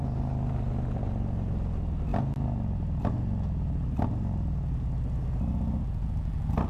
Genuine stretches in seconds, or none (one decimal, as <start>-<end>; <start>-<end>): 0.0-6.7